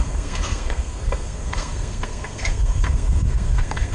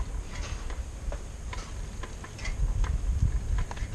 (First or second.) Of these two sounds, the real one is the second